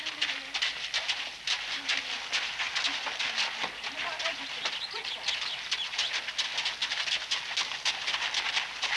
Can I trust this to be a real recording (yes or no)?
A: yes